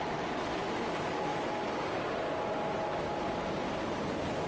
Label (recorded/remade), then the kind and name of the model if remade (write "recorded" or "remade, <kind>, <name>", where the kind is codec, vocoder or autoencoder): recorded